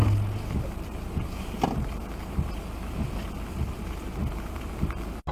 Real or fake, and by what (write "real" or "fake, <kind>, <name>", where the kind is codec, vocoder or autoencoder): real